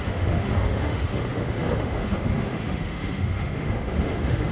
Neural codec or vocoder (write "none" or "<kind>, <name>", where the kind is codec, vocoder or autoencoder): autoencoder, DAC-VAE